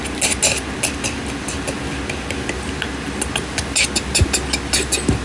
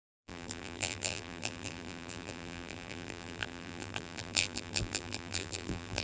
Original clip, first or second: first